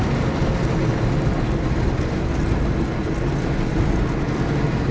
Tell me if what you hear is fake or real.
real